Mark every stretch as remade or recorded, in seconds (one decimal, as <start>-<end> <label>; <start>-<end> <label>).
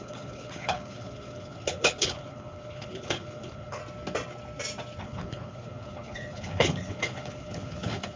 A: 0.0-3.8 remade; 3.8-5.0 recorded; 5.0-8.2 remade